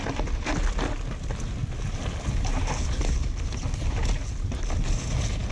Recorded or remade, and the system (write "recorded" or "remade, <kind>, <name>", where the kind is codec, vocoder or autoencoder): recorded